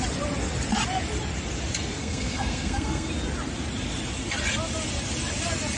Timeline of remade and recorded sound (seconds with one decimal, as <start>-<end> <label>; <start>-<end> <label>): 0.0-2.0 recorded; 2.0-3.1 remade; 3.1-5.8 recorded